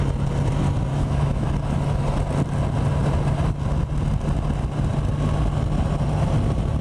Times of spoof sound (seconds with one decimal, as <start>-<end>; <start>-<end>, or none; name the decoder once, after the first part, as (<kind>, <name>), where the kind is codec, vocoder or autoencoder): 0.9-1.5 (autoencoder, DAC-VAE)